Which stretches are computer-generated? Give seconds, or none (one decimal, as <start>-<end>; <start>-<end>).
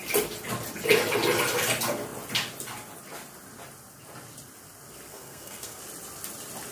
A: 5.1-5.8